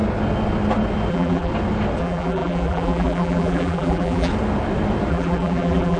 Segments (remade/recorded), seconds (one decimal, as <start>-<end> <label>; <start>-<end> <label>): 0.0-1.1 recorded; 1.1-1.5 remade; 1.5-2.0 recorded; 2.0-4.3 remade; 4.3-5.1 recorded; 5.1-6.0 remade